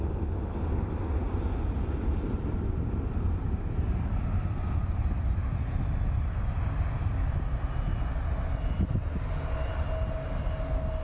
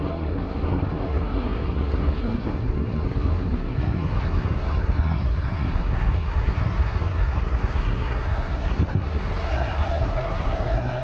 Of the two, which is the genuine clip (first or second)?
first